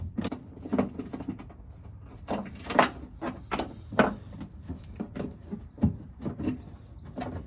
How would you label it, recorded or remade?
recorded